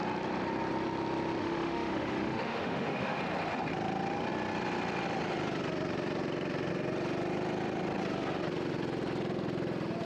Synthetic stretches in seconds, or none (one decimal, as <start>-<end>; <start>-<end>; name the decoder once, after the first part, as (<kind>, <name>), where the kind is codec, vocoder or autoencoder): 1.4-3.2 (autoencoder, DAC-VAE)